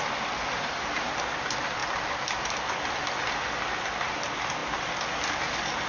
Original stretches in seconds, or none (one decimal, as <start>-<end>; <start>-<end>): 0.0-5.9

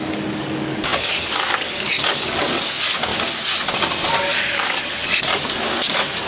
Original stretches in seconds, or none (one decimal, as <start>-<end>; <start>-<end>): 3.1-4.1

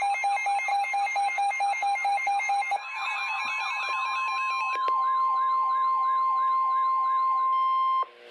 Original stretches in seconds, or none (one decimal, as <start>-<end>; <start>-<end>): 0.0-0.7; 3.4-8.3

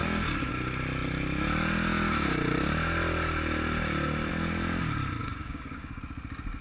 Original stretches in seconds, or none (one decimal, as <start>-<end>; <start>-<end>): 0.5-5.2; 6.0-6.6

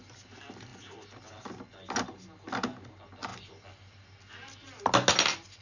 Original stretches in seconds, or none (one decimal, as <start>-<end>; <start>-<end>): 0.0-5.6